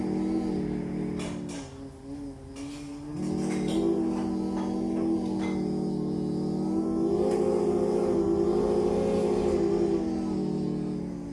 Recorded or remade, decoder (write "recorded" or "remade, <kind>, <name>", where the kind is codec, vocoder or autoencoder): recorded